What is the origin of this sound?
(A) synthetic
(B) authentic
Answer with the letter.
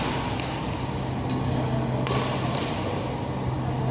B